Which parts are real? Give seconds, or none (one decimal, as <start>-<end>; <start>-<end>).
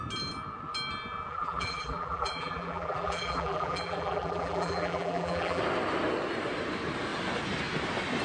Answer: 0.0-1.3; 5.6-8.2